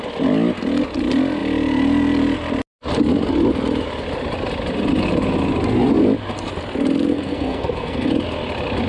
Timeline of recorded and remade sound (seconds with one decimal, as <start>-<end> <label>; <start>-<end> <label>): 0.0-7.1 recorded; 7.1-8.1 remade; 8.1-8.9 recorded